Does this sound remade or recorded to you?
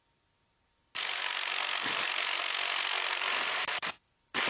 recorded